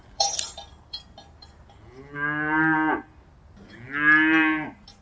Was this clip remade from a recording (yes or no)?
no